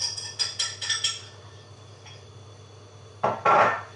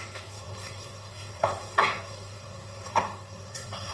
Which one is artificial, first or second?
second